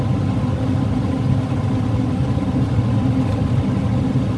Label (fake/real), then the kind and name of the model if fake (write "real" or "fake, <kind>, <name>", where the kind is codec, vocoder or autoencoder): real